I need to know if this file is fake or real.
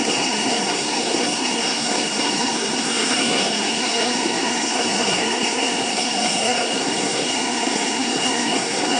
fake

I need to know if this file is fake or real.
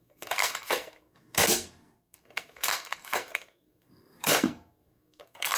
fake